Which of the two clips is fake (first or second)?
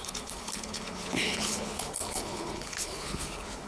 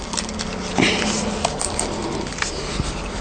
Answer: first